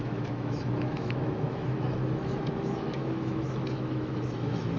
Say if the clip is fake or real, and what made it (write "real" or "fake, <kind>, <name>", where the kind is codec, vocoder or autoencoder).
fake, autoencoder, DAC-VAE